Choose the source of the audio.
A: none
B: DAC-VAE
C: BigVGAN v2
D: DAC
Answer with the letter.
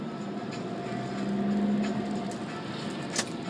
A